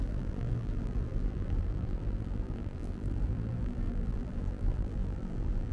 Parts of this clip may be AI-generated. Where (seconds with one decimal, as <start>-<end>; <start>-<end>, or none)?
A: 0.0-5.7